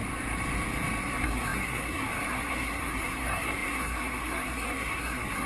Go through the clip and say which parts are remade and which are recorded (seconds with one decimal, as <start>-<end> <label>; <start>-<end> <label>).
0.0-1.0 recorded; 1.0-5.5 remade